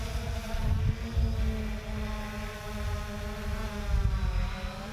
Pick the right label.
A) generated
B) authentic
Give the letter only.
B